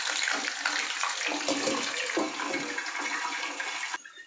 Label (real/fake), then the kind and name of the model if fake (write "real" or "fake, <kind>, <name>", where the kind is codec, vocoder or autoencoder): real